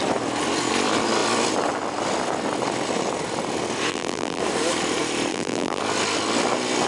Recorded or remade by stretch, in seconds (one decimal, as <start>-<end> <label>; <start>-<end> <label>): 0.0-3.9 recorded; 3.9-4.4 remade; 4.4-5.3 recorded; 5.3-5.8 remade; 5.8-6.9 recorded